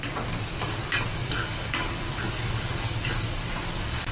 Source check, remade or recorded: remade